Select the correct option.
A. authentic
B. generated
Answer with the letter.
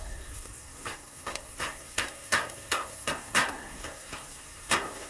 B